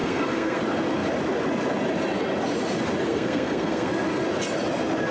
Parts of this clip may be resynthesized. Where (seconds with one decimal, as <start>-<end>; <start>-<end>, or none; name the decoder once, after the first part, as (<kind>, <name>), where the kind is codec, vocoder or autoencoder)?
0.0-0.6 (codec, SNAC); 3.1-3.9